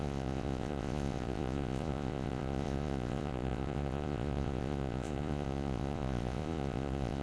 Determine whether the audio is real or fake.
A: fake